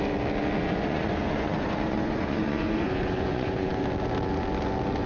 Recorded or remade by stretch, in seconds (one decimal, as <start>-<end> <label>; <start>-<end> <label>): 0.0-0.6 recorded; 0.6-3.7 remade; 3.7-5.1 recorded